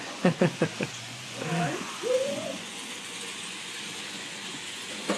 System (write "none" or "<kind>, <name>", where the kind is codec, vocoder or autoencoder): vocoder, Vocos